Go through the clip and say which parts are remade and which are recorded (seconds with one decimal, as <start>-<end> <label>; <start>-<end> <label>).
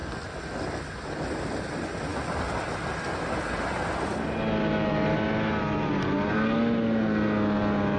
0.0-8.0 recorded